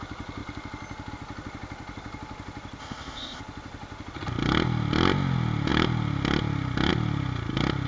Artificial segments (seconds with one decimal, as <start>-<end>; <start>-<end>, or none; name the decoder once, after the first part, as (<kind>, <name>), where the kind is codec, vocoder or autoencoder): 2.8-3.4 (codec, ZipCodec)